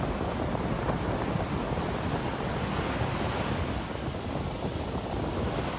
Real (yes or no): yes